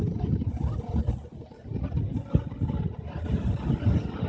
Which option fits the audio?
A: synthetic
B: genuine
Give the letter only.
B